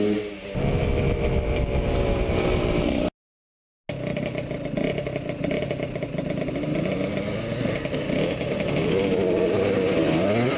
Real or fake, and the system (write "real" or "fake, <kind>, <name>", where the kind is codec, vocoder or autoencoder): real